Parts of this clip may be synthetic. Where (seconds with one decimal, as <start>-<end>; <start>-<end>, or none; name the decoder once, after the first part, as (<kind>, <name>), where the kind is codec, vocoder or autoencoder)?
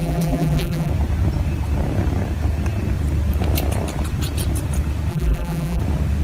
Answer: 0.0-0.9 (vocoder, BigVGAN v2); 5.1-5.8